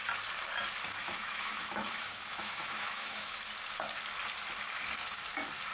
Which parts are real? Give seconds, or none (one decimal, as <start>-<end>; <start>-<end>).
0.0-1.0; 3.4-5.7